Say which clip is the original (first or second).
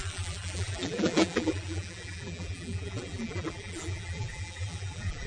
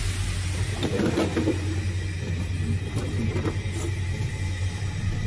second